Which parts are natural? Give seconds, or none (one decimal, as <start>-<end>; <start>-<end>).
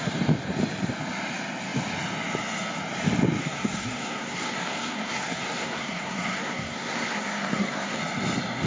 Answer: 0.0-3.4; 8.0-8.7